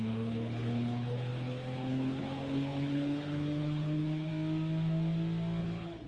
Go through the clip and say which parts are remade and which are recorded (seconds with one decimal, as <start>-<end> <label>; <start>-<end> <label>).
0.0-4.3 remade; 4.3-5.6 recorded; 5.6-6.1 remade